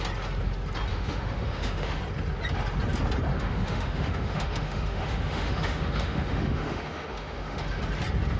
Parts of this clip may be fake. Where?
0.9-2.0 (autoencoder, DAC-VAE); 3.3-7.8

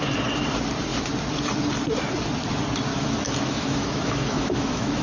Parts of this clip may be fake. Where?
2.9-5.0 (autoencoder, DAC-VAE)

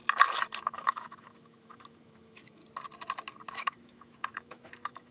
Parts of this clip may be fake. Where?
0.6-2.6 (autoencoder, DAC-VAE); 3.5-5.1

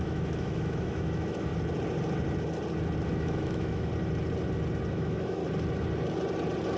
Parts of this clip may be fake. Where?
0.0-1.5 (autoencoder, DAC-VAE); 3.1-3.9; 4.9-5.4

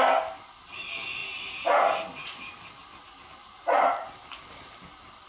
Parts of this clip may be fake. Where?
none

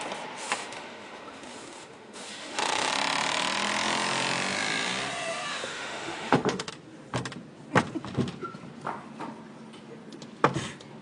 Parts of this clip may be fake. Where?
0.4-2.9 (autoencoder, DAC-VAE); 5.5-6.7

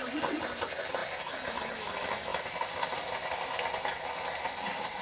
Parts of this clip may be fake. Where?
none

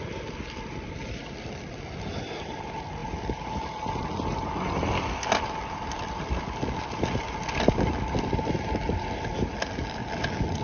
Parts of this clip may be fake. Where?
none